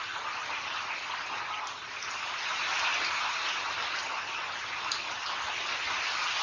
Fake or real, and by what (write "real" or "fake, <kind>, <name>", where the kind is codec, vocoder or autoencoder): real